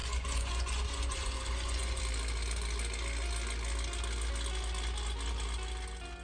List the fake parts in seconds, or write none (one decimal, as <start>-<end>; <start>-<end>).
0.0-2.0